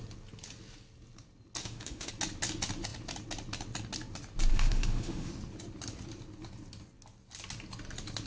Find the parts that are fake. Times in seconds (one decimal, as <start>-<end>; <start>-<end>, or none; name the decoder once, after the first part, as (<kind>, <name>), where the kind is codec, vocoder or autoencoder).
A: 1.6-2.1 (autoencoder, DAC-VAE); 4.5-5.3